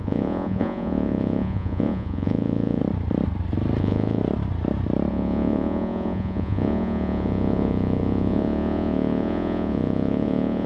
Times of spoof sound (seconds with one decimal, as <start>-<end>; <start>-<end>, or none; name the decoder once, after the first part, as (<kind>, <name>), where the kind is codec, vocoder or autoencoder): 0.0-2.8 (vocoder, Vocos); 3.8-4.2; 5.1-10.7